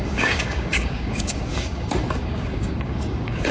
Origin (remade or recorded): remade